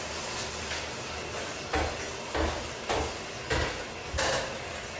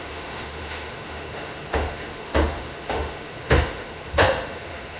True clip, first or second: first